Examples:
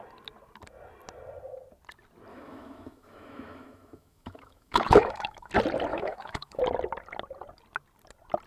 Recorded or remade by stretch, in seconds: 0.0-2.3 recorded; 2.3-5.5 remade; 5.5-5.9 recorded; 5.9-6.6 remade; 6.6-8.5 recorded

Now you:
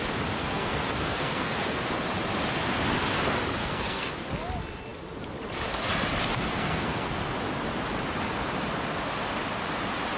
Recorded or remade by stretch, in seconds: 0.0-0.4 recorded; 0.4-1.8 remade; 1.8-3.6 recorded; 3.6-4.1 remade; 4.1-6.5 recorded; 6.5-7.2 remade; 7.2-10.2 recorded

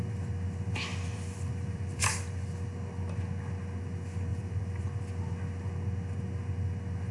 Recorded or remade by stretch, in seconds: 0.0-0.9 recorded; 0.9-2.0 remade; 2.0-4.3 recorded; 4.3-4.8 remade; 4.8-7.1 recorded

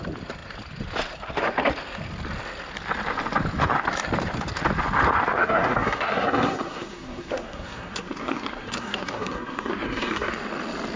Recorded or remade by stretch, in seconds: 0.0-5.4 recorded; 5.4-10.3 remade; 10.3-11.0 recorded

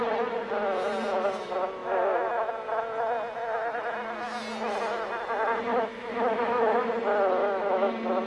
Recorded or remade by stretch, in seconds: 0.0-5.7 recorded; 5.7-6.9 remade; 6.9-7.4 recorded; 7.4-7.9 remade; 7.9-8.3 recorded

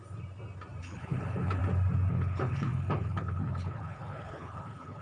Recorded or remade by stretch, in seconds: 0.0-0.8 recorded; 0.8-1.6 remade; 1.6-2.1 recorded; 2.1-5.0 remade